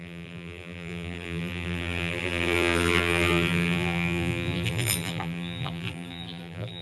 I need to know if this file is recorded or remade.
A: remade